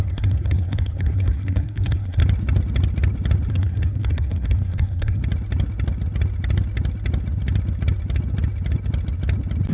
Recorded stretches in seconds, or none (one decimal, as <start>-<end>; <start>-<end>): 2.2-3.5; 5.2-9.7

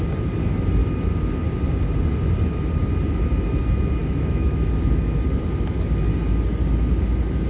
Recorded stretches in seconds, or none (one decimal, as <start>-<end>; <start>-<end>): 0.0-4.0; 4.7-7.5

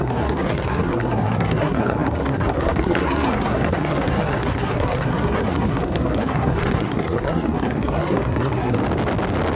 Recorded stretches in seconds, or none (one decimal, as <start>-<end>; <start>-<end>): 8.8-9.6